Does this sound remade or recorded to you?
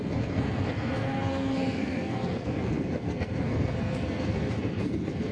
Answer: remade